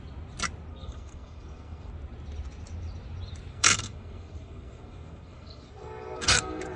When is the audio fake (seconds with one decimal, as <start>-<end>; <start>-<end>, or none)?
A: 0.7-1.9; 3.5-6.8